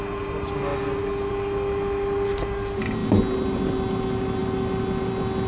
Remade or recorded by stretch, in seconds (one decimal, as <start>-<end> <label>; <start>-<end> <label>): 0.0-5.5 recorded